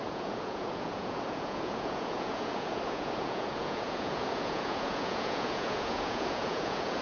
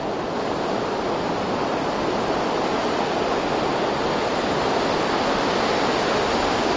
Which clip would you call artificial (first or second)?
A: first